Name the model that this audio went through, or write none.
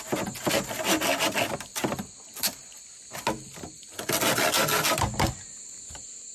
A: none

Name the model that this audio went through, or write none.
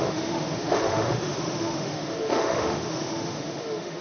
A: autoencoder, DAC-VAE